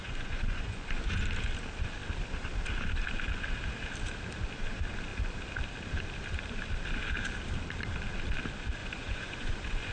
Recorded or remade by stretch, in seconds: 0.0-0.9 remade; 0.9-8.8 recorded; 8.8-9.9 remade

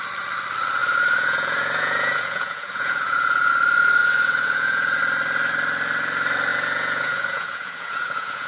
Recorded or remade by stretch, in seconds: 0.0-0.8 recorded; 0.8-3.5 remade; 3.5-4.0 recorded; 4.0-5.0 remade; 5.0-6.5 recorded; 6.5-8.5 remade

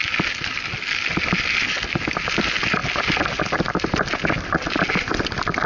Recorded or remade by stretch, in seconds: 0.0-5.7 recorded